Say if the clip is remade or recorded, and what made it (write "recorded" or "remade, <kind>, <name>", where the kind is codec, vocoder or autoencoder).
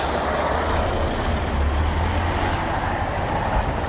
recorded